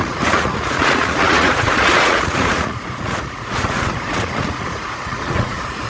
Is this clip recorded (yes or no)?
no